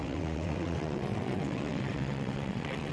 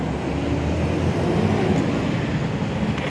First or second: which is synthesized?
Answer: first